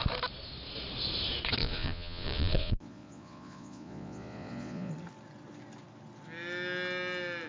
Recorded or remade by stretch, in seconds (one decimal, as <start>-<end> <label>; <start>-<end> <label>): 0.0-1.6 recorded; 1.6-4.9 remade; 4.9-7.5 recorded